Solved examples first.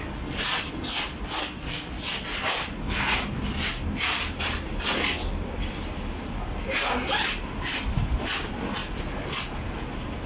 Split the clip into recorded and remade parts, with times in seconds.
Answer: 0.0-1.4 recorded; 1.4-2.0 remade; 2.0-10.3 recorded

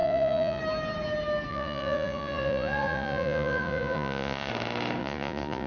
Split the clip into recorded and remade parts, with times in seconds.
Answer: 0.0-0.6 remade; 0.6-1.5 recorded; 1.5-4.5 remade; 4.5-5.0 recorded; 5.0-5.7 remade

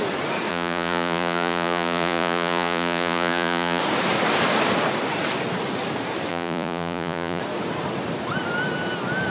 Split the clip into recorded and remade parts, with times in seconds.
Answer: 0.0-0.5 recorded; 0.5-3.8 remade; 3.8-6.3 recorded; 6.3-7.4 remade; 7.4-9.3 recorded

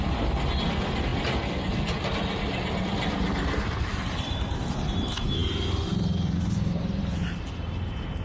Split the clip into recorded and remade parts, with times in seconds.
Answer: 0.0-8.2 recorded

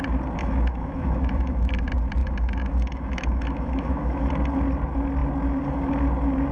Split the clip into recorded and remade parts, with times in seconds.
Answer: 0.0-0.4 recorded; 0.4-1.8 remade; 1.8-2.2 recorded; 2.2-4.2 remade; 4.2-6.5 recorded

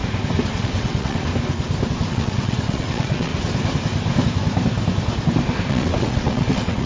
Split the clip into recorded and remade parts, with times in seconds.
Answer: 0.0-0.6 recorded; 0.6-1.3 remade; 1.3-2.1 recorded; 2.1-3.3 remade; 3.3-5.7 recorded; 5.7-6.9 remade

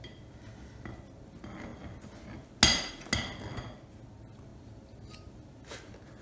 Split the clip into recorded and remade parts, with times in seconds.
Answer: 0.0-6.2 recorded